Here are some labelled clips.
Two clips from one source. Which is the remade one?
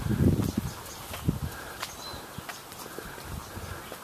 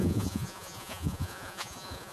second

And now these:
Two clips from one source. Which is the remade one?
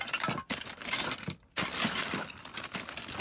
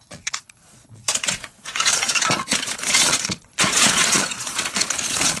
second